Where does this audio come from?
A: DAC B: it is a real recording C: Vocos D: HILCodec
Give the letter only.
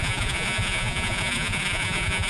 C